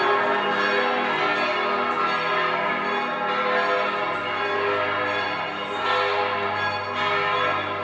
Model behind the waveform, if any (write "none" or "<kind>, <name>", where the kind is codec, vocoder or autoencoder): none